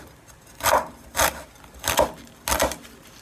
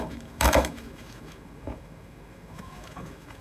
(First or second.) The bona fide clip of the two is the first